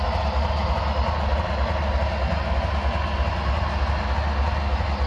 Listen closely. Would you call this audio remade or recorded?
recorded